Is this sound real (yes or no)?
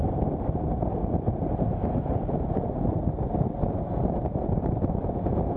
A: yes